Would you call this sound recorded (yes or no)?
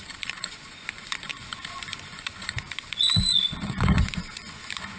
no